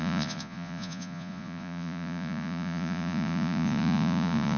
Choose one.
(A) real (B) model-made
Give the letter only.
B